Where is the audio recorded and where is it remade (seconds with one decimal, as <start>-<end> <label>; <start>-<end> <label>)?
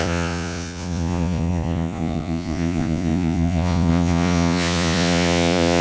0.0-5.8 remade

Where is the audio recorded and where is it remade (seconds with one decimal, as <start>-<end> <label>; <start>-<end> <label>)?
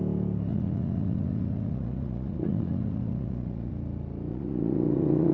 0.0-0.5 recorded; 0.5-3.7 remade; 3.7-4.3 recorded; 4.3-5.3 remade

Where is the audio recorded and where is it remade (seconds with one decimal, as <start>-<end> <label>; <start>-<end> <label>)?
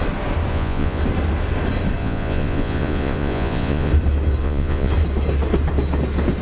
0.0-0.5 recorded; 0.5-1.0 remade; 1.0-2.0 recorded; 2.0-3.9 remade; 3.9-4.4 recorded; 4.4-4.9 remade; 4.9-6.4 recorded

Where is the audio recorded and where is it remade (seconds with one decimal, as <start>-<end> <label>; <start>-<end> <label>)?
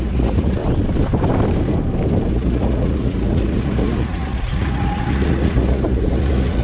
0.0-0.6 remade; 0.6-2.3 recorded; 2.3-6.6 remade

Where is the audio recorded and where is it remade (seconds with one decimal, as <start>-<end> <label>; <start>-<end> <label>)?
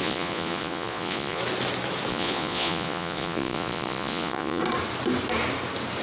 0.0-1.4 remade; 1.4-2.1 recorded; 2.1-4.6 remade; 4.6-6.0 recorded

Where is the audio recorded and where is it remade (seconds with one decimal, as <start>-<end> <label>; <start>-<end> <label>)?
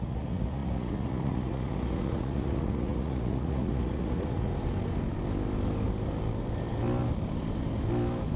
0.0-4.5 remade; 4.5-8.4 recorded